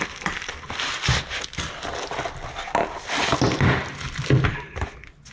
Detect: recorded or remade recorded